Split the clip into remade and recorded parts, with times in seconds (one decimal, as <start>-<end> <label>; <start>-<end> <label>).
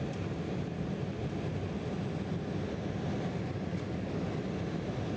0.0-3.7 recorded; 3.7-4.2 remade; 4.2-5.2 recorded